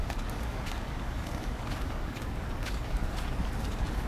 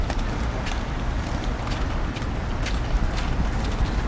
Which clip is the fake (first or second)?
first